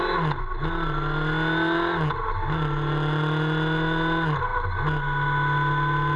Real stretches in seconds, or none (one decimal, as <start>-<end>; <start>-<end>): 0.0-6.2